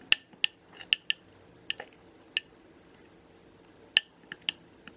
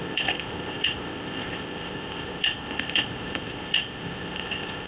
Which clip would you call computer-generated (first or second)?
second